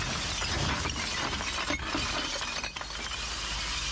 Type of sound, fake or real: real